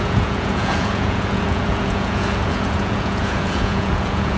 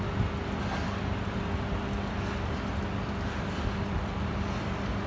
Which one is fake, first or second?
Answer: first